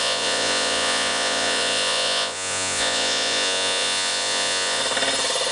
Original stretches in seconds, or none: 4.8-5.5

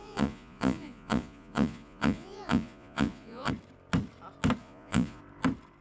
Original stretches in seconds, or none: 3.5-4.6; 5.2-5.8

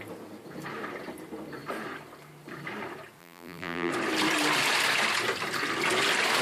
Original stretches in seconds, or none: 0.0-3.2; 3.9-6.4

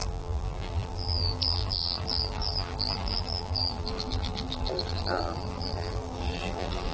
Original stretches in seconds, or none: none

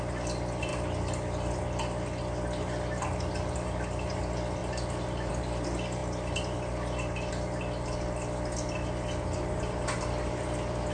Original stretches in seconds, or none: 0.0-10.9